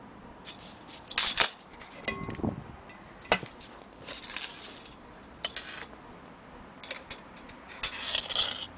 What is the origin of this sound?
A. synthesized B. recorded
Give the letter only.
B